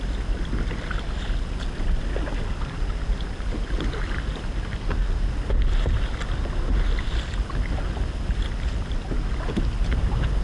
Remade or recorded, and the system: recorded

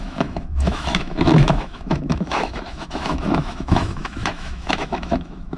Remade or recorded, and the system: remade, autoencoder, DAC-VAE